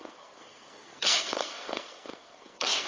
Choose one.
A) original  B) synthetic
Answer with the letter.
B